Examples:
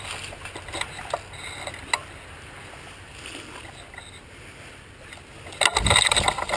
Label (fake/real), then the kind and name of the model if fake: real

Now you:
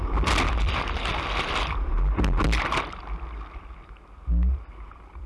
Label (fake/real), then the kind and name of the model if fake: real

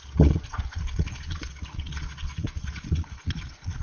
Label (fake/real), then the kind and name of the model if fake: fake, vocoder, Vocos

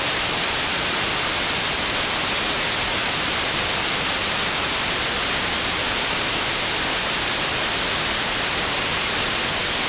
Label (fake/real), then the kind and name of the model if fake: real